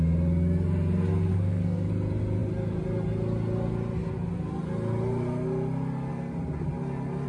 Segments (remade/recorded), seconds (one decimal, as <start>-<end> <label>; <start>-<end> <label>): 0.0-1.3 recorded; 1.3-1.9 remade; 1.9-7.3 recorded